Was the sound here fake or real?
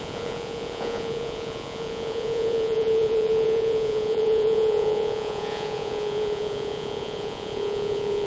fake